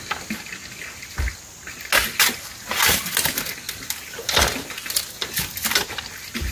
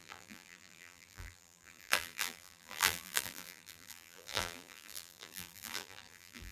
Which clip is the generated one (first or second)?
second